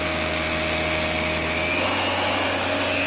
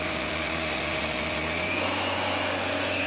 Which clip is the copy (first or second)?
second